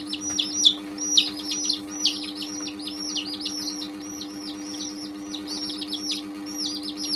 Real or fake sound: real